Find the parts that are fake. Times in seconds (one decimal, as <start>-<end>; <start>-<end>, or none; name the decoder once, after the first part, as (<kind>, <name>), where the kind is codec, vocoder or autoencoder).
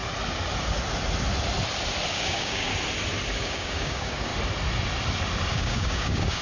2.1-2.7 (codec, DAC); 3.4-4.3; 5.5-6.4